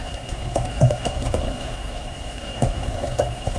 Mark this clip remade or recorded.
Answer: remade